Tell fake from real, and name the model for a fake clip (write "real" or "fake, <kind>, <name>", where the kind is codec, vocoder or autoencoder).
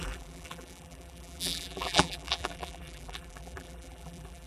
fake, vocoder, BigVGAN v2